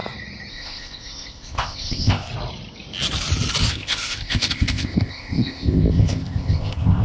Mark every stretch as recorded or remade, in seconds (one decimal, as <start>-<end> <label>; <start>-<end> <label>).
0.0-0.5 recorded; 0.5-2.3 remade; 2.3-3.7 recorded; 3.7-7.0 remade